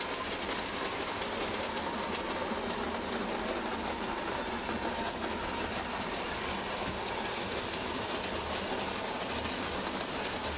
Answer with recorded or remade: recorded